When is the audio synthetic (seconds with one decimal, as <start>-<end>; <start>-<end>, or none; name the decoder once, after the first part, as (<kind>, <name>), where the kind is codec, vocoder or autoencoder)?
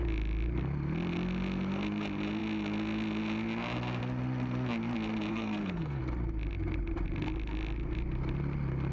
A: 5.3-6.0 (codec, SNAC)